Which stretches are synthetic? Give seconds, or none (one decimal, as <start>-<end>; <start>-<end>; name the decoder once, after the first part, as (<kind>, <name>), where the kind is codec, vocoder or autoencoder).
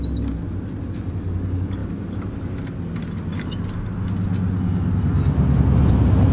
none